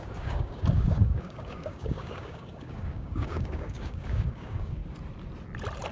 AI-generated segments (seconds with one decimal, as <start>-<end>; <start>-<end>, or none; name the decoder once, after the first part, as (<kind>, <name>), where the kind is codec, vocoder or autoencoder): 0.0-4.8 (codec, DAC)